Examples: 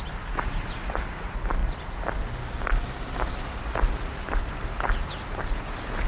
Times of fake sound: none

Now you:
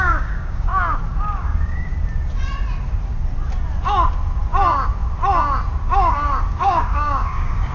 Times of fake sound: 0.0-0.7 (codec, DAC); 1.4-1.9; 6.5-7.7